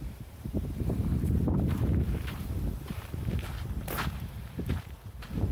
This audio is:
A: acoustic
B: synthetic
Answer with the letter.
B